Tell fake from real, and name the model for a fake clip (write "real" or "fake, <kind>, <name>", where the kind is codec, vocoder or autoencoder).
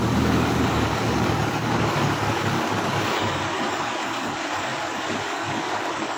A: fake, codec, DAC